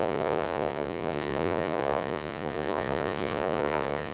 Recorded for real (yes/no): no